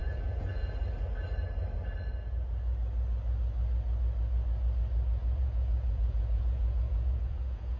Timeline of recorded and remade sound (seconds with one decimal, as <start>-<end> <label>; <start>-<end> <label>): 0.0-0.7 remade; 0.7-5.2 recorded; 5.2-7.8 remade